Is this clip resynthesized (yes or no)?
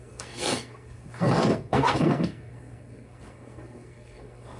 yes